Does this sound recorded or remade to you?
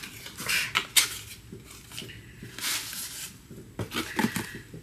recorded